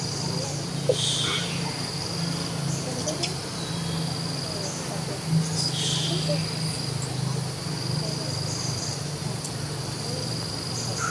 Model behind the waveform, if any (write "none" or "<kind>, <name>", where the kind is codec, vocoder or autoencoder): none